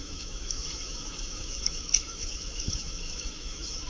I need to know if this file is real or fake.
fake